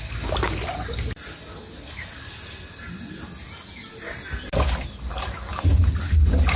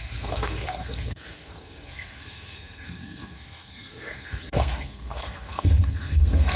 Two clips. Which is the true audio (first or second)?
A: first